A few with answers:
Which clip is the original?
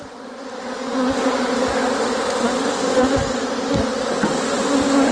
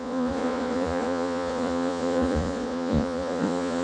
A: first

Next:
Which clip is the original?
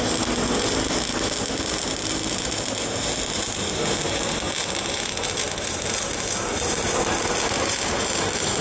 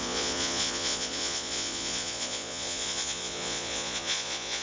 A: first